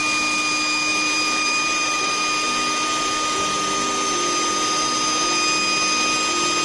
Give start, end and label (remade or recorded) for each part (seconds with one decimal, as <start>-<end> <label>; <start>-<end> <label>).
0.0-0.9 recorded; 0.9-2.2 remade; 2.2-6.6 recorded

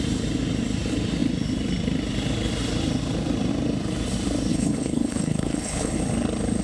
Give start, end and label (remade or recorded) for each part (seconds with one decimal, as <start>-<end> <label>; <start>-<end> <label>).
0.0-4.5 recorded; 4.5-6.0 remade; 6.0-6.6 recorded

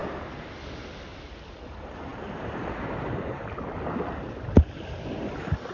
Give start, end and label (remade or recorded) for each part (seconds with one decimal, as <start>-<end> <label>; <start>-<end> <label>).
0.0-5.7 recorded